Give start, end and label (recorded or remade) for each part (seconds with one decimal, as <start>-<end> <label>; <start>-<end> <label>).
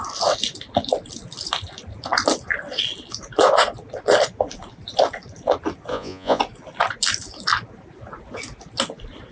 0.0-5.9 recorded; 5.9-6.4 remade; 6.4-9.3 recorded